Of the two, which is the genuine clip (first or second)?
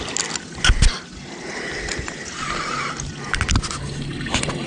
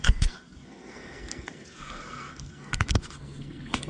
first